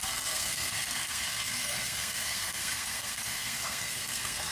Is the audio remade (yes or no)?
yes